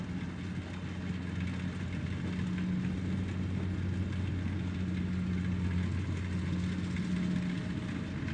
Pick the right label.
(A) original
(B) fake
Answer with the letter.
A